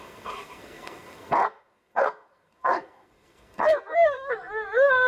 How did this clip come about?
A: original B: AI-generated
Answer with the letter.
B